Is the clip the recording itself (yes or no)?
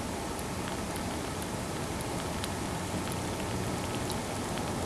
yes